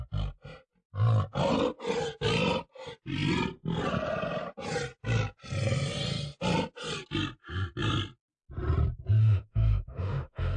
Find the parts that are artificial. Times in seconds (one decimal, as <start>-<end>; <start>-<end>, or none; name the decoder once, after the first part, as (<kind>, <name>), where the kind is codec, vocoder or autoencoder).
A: 9.2-10.6 (autoencoder, DAC-VAE)